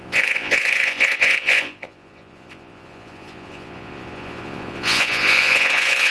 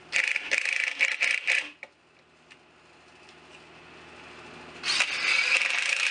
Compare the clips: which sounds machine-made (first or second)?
first